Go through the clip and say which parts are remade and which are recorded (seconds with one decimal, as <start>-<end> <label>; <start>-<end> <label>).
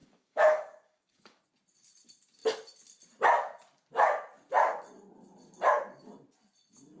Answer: 0.0-1.4 remade; 1.4-7.0 recorded